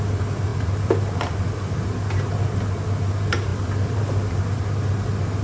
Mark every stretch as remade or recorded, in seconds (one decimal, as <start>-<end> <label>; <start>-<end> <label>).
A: 0.0-0.5 recorded; 0.5-1.8 remade; 1.8-5.4 recorded